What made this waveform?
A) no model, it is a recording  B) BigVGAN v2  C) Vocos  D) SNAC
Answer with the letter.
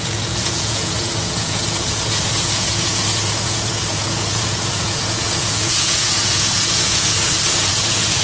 C